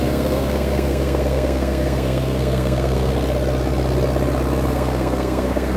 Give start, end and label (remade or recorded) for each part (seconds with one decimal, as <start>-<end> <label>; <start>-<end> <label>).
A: 0.0-3.1 remade; 3.1-4.7 recorded; 4.7-5.8 remade